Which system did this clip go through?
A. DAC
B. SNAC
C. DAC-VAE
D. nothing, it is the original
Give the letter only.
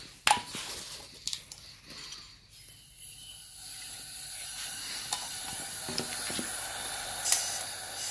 D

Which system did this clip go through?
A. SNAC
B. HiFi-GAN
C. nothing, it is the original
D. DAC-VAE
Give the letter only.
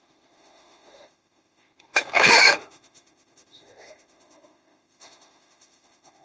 D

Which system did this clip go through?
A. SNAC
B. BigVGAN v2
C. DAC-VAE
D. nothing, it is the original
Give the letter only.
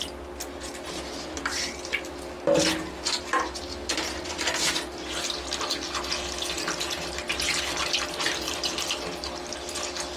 D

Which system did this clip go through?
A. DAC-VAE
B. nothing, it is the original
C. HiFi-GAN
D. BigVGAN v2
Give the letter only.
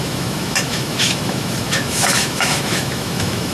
A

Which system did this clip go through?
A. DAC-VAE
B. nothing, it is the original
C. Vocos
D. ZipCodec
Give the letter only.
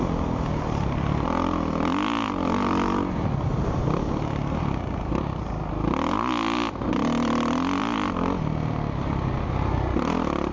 B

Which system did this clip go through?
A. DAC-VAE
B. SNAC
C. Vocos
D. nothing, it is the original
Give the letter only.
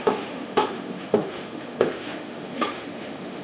A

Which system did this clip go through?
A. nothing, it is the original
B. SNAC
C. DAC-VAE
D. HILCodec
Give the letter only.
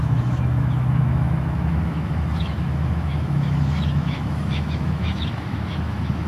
C